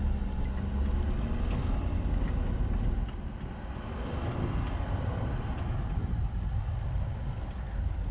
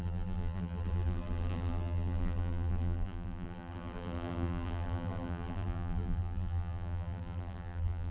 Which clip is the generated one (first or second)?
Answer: second